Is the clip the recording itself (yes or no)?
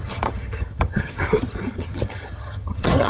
no